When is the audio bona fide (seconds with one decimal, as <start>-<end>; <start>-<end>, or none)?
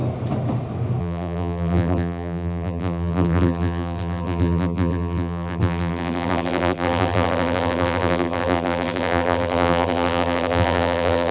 0.0-1.0